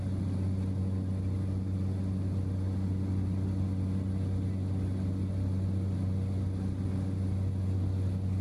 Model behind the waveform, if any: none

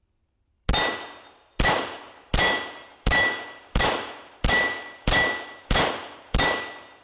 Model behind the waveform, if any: none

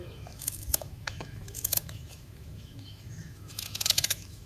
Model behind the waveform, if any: autoencoder, DAC-VAE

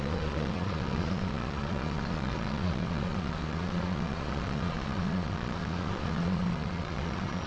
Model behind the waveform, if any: vocoder, Vocos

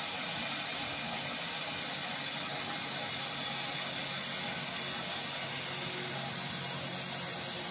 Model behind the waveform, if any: none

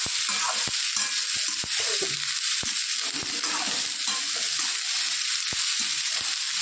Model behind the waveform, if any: none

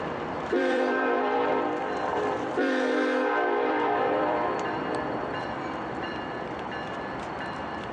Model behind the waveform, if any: vocoder, BigVGAN v2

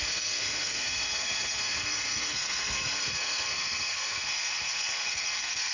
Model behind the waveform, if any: codec, SNAC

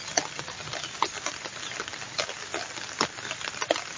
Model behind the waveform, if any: none